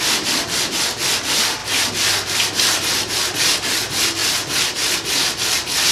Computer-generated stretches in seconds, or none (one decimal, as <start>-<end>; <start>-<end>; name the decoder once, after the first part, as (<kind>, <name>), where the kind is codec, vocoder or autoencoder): none